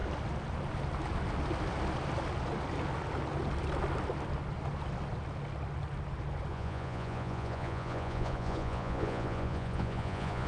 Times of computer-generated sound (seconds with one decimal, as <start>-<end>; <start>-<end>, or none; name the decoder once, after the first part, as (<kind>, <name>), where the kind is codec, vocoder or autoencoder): 6.5-10.5 (vocoder, Vocos)